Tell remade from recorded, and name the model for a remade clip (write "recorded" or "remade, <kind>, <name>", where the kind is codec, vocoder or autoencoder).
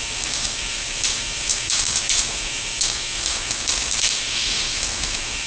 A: remade, codec, SNAC